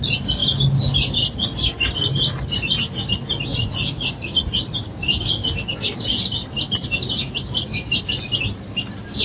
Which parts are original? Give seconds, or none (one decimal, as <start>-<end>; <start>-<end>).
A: 0.0-3.5; 4.5-9.2